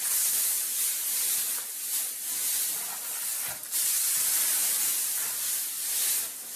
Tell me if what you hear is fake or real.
real